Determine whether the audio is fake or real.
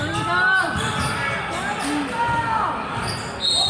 real